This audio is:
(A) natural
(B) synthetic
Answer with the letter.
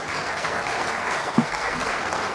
B